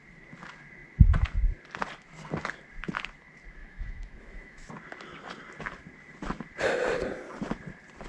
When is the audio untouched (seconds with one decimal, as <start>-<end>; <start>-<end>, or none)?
0.0-3.6; 4.7-8.1